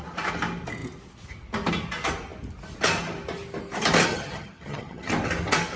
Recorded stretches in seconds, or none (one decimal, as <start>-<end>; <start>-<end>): 0.0-4.1; 5.1-5.8